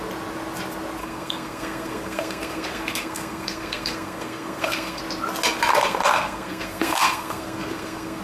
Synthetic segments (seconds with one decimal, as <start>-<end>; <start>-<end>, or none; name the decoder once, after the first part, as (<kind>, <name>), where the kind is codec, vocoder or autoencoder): 1.0-5.0 (codec, SNAC); 5.7-8.2